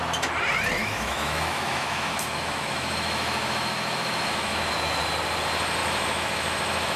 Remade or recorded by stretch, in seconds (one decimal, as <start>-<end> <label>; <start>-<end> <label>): 0.0-0.8 recorded; 0.8-5.0 remade; 5.0-5.8 recorded; 5.8-7.0 remade